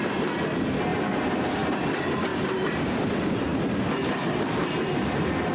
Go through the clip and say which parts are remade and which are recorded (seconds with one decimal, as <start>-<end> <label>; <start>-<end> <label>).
0.0-0.9 recorded; 0.9-1.6 remade; 1.6-2.3 recorded; 2.3-3.1 remade; 3.1-5.5 recorded